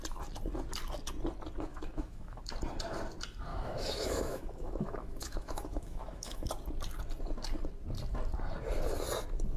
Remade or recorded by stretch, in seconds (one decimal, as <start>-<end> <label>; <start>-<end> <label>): 0.0-1.7 recorded; 1.7-2.4 remade; 2.4-3.5 recorded; 3.5-6.5 remade; 6.5-9.6 recorded